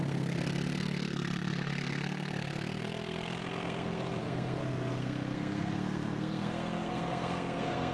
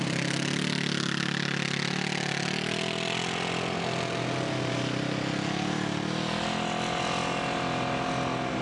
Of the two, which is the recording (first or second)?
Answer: second